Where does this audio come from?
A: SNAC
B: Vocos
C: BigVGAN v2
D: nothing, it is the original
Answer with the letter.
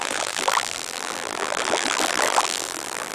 C